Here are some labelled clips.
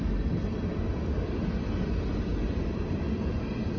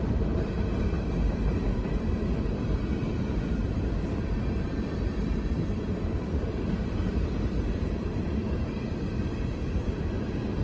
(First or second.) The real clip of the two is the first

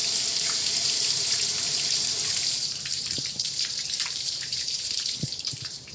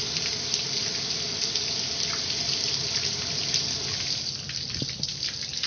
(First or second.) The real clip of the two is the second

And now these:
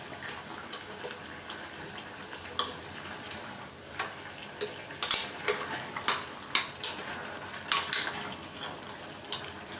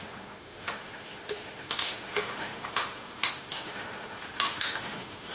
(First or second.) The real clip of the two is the first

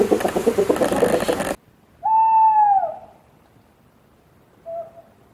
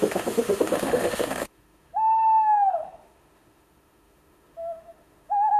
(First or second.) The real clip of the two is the first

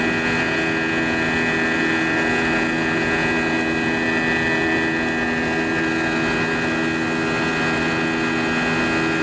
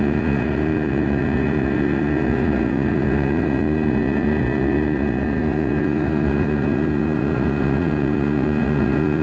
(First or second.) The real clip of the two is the first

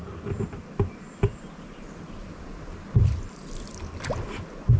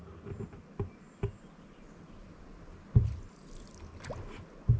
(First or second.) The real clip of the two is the second